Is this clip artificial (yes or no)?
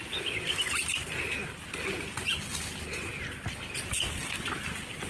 no